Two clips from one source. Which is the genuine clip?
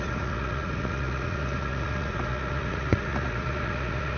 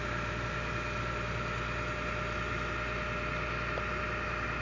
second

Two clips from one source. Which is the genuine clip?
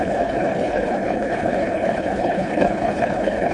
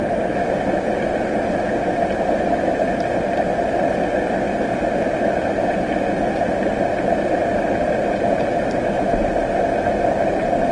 second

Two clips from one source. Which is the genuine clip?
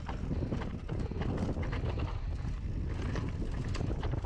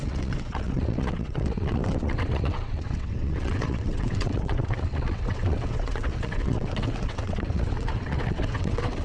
first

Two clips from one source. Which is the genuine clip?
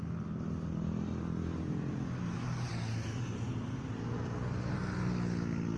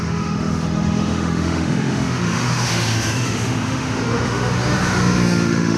first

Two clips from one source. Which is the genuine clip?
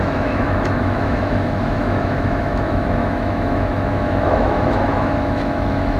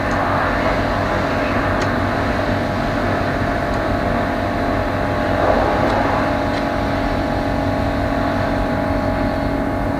second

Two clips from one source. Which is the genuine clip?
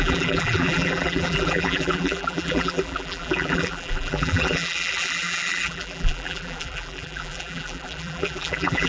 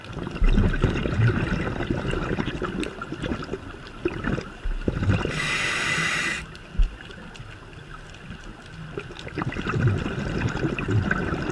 second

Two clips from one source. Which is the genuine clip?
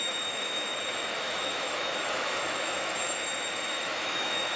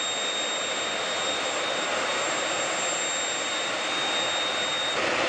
second